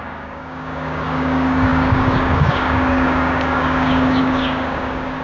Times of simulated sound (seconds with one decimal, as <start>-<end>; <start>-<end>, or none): 0.0-5.2